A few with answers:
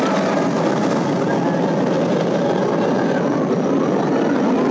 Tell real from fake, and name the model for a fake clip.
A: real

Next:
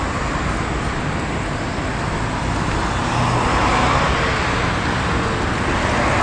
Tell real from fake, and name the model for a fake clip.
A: real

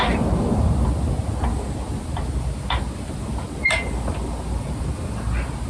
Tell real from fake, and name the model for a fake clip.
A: real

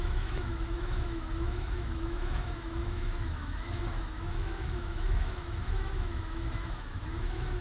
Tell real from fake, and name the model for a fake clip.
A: fake, autoencoder, DAC-VAE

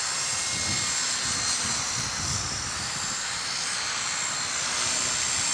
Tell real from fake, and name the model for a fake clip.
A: real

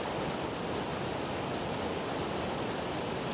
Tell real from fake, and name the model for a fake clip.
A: real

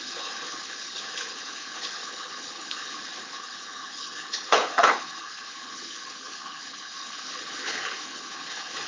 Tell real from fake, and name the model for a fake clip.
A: fake, codec, HILCodec